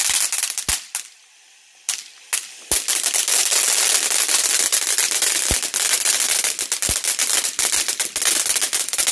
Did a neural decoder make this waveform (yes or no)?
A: no